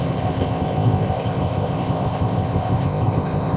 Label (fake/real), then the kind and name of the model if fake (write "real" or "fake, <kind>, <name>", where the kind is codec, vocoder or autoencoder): fake, codec, ZipCodec